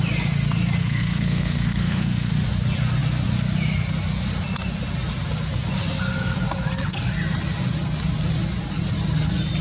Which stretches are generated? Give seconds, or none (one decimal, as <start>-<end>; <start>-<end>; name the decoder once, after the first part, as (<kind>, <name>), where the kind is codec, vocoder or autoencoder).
0.8-2.3 (codec, SNAC)

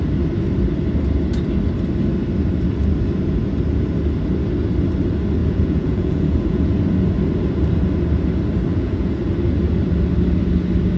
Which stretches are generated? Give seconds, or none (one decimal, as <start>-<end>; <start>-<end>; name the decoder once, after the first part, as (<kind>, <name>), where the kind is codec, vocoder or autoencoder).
5.4-6.7 (vocoder, Vocos); 8.7-9.2

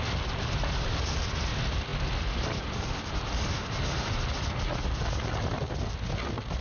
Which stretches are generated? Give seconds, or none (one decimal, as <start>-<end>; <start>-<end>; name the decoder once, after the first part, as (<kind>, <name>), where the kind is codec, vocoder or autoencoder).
none